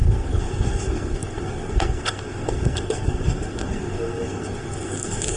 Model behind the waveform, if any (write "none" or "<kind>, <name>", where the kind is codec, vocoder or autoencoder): codec, SNAC